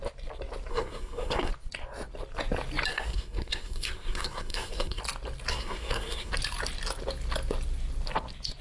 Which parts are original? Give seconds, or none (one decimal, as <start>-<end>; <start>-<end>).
0.0-0.7; 1.5-2.9; 5.0-5.5; 6.3-8.6

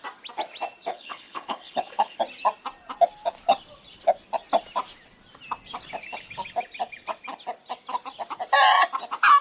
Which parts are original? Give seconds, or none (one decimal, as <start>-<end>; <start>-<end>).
0.0-0.9; 2.2-9.4

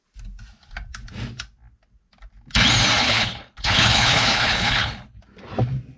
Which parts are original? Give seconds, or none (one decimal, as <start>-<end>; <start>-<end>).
0.0-3.0; 5.2-6.0

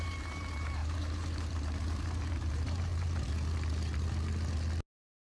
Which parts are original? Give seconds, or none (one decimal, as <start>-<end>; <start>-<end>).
2.9-4.9